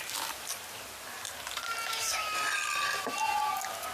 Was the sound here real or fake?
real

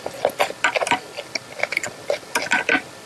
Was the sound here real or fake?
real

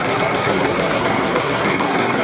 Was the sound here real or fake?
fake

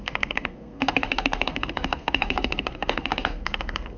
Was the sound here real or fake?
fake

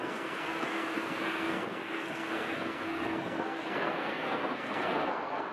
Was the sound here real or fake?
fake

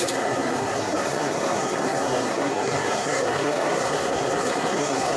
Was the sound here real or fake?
fake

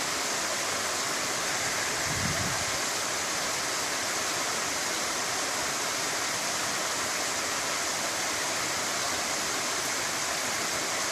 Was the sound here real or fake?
real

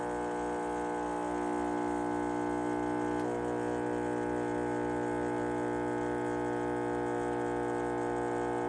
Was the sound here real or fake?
real